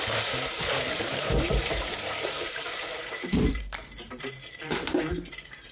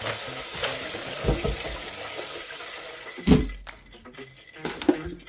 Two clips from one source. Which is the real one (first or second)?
second